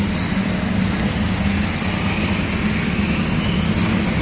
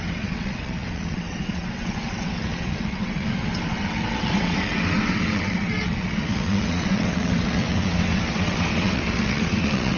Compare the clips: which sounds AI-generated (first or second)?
second